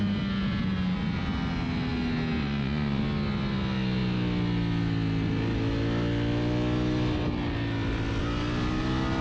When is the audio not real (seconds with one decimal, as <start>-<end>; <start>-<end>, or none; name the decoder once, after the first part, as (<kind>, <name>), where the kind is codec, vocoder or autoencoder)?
2.4-3.0 (vocoder, Vocos)